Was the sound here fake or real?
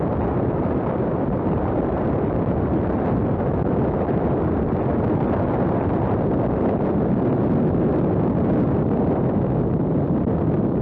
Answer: real